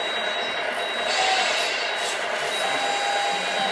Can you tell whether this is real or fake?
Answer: real